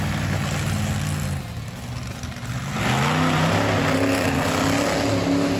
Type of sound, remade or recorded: recorded